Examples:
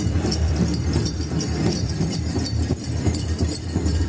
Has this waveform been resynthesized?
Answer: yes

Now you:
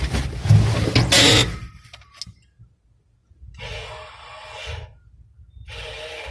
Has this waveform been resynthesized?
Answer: no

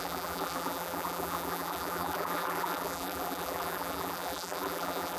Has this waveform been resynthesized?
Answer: yes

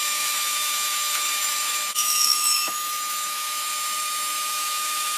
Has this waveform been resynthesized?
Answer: yes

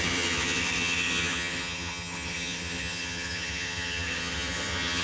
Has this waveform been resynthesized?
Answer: yes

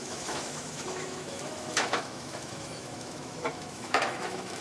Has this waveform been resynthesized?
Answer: yes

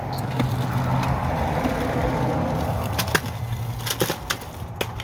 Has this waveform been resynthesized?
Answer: no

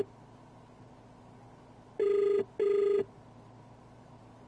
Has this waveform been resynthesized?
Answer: no